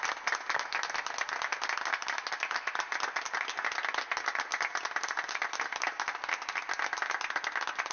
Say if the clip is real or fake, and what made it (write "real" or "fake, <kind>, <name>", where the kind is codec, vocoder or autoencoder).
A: real